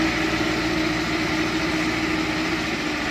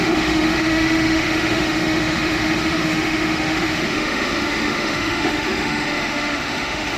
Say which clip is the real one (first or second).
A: first